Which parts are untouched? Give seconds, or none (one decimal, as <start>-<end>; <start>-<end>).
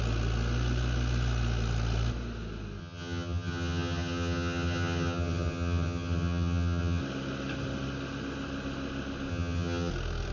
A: 0.0-2.8; 7.0-9.3; 9.9-10.3